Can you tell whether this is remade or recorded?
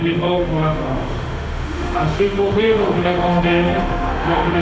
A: remade